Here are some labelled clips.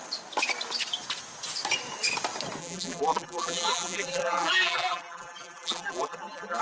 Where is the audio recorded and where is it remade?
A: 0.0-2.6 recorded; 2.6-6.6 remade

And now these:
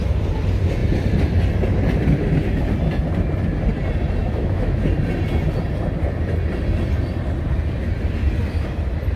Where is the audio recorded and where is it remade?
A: 0.0-4.2 recorded; 4.2-4.8 remade; 4.8-9.2 recorded